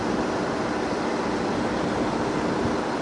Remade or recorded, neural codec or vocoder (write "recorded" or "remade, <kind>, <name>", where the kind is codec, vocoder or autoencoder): recorded